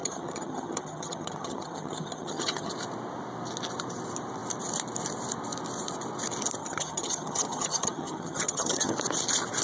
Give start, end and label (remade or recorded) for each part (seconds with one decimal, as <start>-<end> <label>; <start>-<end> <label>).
0.0-2.7 remade; 2.7-6.6 recorded; 6.6-8.9 remade; 8.9-9.6 recorded